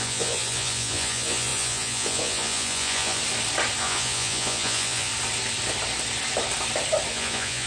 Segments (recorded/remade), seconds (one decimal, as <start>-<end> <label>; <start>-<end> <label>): 0.0-3.2 remade; 3.2-3.8 recorded; 3.8-5.1 remade; 5.1-7.1 recorded; 7.1-7.7 remade